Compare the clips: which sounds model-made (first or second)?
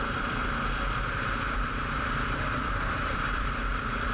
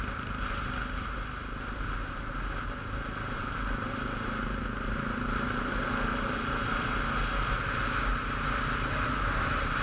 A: first